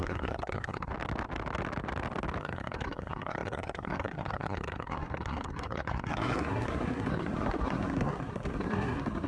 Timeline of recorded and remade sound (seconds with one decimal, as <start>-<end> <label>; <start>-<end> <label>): 0.0-0.9 remade; 0.9-2.4 recorded; 2.4-9.3 remade